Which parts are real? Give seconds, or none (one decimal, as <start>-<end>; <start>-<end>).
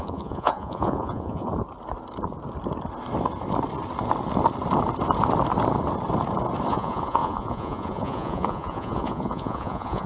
1.5-6.7